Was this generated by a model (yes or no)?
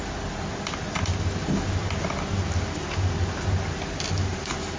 no